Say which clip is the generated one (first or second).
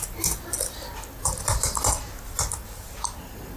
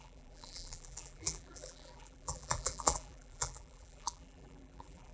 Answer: second